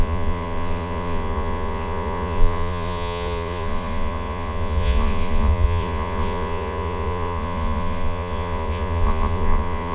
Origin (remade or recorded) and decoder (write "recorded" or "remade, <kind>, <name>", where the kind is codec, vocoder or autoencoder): remade, vocoder, Vocos